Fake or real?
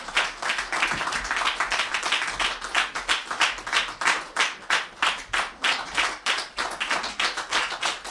real